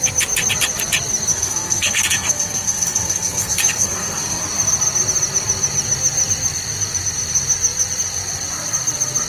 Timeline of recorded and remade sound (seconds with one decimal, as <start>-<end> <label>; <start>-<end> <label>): 0.0-1.3 recorded; 1.3-4.4 remade; 4.4-9.3 recorded